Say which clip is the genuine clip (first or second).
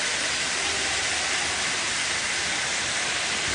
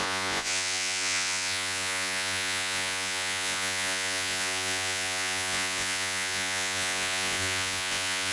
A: first